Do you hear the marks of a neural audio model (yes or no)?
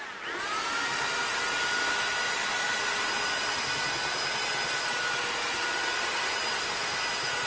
no